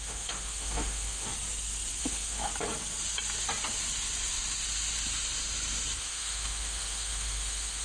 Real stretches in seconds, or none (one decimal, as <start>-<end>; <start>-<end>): 1.3-2.0; 2.5-6.0